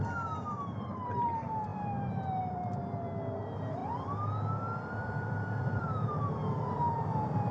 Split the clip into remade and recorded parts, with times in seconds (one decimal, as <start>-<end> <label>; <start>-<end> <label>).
0.0-2.8 remade; 2.8-3.4 recorded; 3.4-3.8 remade; 3.8-5.0 recorded; 5.0-7.5 remade